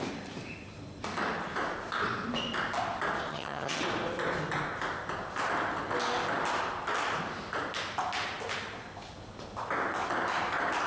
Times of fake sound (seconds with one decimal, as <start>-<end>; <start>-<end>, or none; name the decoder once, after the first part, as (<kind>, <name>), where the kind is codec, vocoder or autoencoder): 3.3-3.8 (vocoder, HiFi-GAN)